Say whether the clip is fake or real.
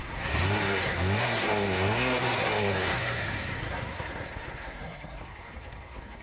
fake